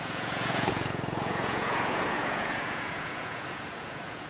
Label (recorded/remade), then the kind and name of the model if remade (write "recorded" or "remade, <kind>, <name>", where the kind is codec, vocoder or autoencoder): remade, vocoder, Vocos